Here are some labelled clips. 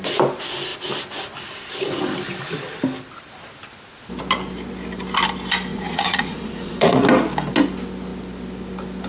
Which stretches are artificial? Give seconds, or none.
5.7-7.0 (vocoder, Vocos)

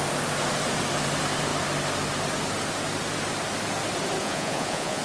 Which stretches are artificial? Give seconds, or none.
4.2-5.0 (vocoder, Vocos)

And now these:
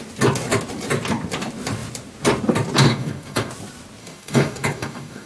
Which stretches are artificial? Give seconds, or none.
2.9-3.5 (codec, DAC); 4.0-5.3

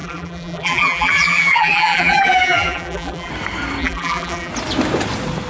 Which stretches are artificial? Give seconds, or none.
0.0-3.3 (vocoder, BigVGAN v2); 3.8-4.5